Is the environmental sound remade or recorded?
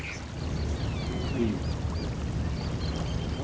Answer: recorded